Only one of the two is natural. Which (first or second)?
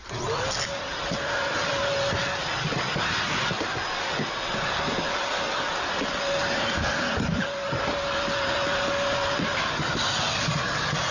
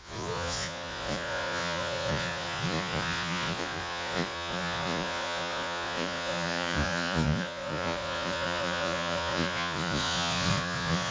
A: first